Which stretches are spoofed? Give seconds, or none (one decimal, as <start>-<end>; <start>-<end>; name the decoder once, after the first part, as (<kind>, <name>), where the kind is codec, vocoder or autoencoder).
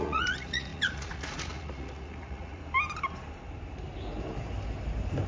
0.0-2.6 (vocoder, Vocos)